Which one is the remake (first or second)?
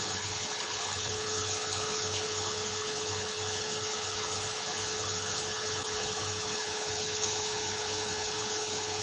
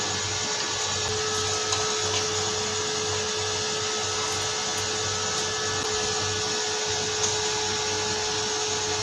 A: first